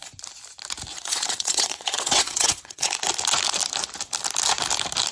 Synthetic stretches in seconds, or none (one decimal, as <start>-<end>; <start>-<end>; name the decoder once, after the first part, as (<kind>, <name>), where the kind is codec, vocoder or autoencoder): 0.9-2.9 (vocoder, WaveNeXt)